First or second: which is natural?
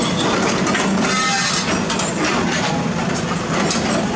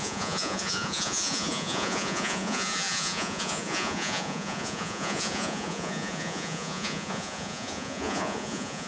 first